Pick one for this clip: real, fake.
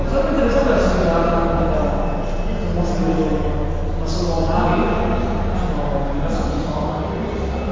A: real